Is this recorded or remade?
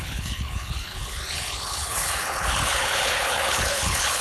remade